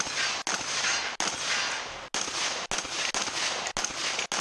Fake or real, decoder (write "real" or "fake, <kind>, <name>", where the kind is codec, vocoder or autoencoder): real